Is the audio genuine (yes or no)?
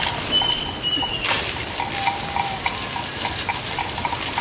yes